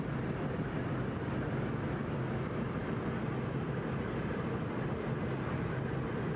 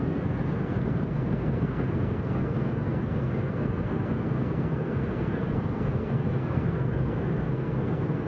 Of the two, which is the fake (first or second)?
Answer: second